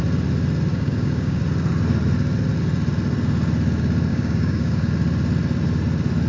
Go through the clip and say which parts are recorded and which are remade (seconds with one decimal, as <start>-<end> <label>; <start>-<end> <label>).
0.0-0.7 recorded; 0.7-1.4 remade; 1.4-4.1 recorded; 4.1-4.9 remade; 4.9-6.3 recorded